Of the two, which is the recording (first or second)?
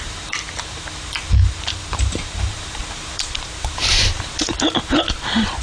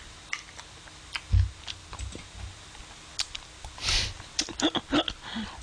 second